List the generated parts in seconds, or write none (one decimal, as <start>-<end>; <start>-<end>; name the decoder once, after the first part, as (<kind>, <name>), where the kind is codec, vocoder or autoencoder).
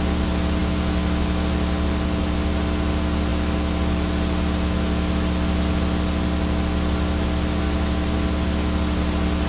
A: none